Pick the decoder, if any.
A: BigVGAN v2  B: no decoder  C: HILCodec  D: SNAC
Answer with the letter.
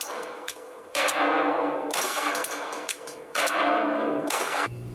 D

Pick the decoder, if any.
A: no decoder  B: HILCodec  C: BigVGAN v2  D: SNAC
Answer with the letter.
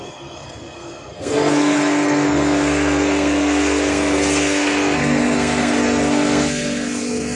D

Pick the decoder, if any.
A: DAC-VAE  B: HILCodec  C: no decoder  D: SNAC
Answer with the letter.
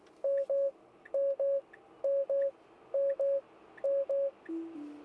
C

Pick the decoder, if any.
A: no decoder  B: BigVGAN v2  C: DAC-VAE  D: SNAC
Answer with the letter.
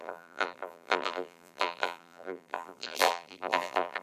B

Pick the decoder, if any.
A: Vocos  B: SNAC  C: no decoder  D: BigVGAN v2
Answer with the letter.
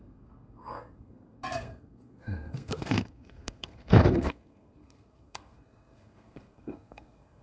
B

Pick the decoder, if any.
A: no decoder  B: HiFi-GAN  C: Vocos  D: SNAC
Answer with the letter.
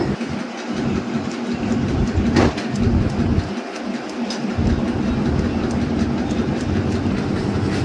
A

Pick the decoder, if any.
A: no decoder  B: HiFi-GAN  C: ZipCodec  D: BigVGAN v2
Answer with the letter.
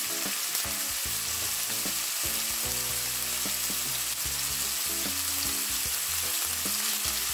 A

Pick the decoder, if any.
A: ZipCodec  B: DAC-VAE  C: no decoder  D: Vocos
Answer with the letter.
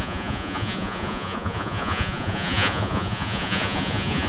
D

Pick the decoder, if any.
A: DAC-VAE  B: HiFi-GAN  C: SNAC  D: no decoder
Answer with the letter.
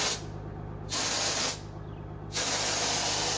D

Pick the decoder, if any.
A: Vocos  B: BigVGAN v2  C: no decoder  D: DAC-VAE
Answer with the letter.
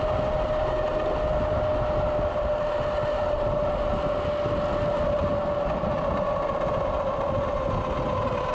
C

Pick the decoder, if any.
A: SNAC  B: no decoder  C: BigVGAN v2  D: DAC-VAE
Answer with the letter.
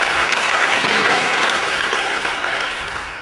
A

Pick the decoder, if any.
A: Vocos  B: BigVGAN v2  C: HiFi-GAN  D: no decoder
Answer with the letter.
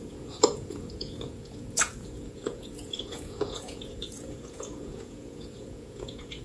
A